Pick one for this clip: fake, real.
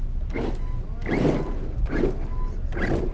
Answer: real